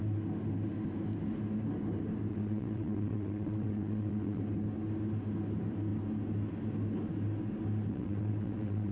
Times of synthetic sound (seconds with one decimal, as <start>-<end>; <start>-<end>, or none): 2.3-4.4; 7.9-8.9